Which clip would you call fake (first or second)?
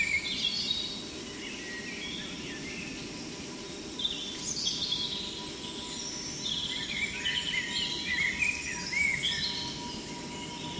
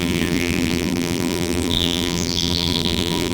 second